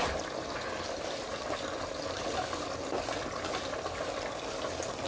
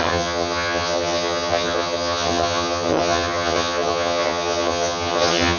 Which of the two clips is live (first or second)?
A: first